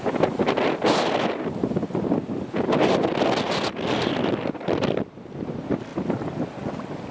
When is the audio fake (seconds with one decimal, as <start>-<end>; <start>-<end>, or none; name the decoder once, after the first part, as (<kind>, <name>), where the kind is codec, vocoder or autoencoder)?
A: none

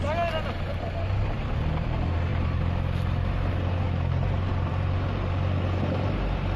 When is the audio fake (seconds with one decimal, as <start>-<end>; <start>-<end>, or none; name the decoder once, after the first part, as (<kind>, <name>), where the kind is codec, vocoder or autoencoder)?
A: none

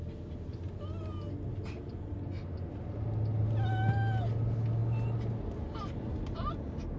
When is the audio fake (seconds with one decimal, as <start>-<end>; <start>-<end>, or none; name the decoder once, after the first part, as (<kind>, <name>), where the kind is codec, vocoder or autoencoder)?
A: none

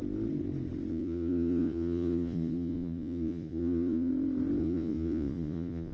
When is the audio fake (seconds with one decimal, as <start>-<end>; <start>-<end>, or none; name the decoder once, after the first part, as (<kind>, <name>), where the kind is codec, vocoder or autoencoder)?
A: 0.9-4.1 (vocoder, Vocos); 4.6-5.9

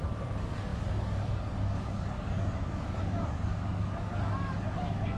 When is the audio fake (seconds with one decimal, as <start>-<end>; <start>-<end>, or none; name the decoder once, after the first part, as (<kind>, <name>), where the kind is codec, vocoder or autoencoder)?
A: 0.0-5.2 (codec, DAC)

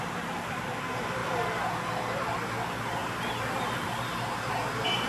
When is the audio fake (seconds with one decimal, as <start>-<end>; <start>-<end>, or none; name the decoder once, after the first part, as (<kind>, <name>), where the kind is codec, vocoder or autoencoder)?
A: none